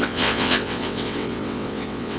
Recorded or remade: remade